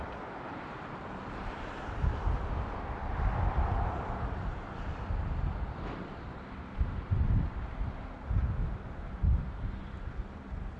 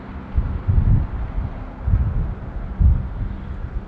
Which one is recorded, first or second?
second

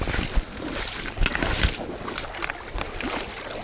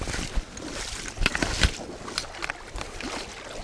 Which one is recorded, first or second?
first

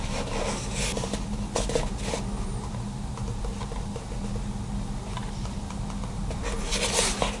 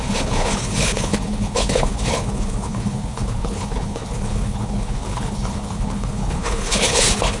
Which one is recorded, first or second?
first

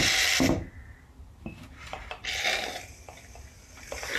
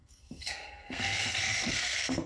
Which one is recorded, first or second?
first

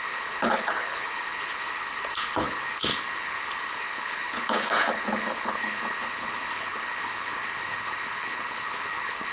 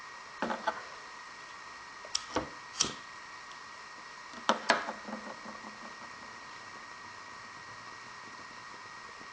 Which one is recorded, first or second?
second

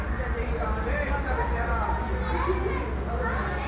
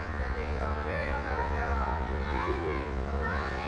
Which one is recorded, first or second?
first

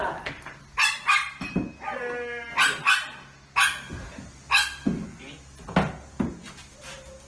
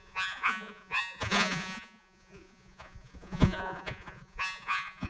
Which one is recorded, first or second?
first